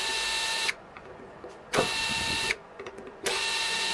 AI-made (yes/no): yes